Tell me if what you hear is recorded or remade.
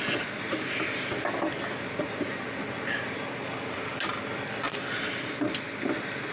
recorded